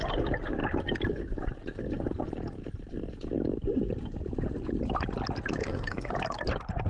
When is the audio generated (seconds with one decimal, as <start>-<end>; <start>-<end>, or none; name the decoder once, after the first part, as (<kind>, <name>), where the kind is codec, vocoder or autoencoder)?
5.6-6.1 (codec, SNAC)